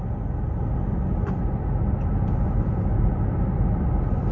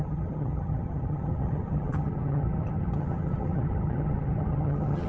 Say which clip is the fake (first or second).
second